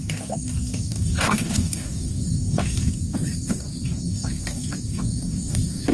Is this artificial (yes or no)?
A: yes